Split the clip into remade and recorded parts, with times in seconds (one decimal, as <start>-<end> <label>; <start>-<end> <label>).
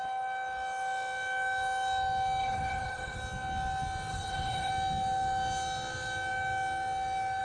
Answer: 0.0-2.4 recorded; 2.4-3.2 remade; 3.2-4.1 recorded; 4.1-4.7 remade; 4.7-7.4 recorded